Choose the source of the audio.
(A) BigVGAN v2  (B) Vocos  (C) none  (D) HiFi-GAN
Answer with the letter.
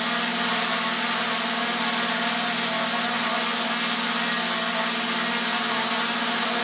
C